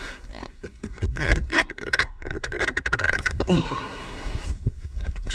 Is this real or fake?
fake